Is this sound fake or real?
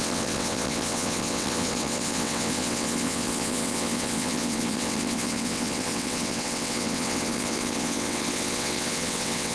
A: fake